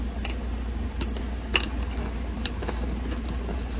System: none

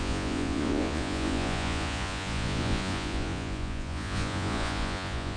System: vocoder, Vocos